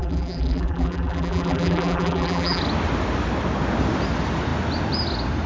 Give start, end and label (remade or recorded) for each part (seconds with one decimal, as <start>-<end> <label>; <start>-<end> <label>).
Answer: 0.0-2.6 remade; 2.6-5.5 recorded